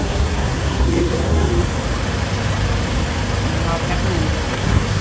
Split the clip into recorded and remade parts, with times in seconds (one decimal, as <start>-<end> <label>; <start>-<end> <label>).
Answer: 0.0-1.5 remade; 1.5-4.5 recorded; 4.5-5.0 remade